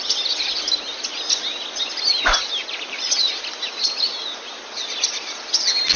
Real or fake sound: real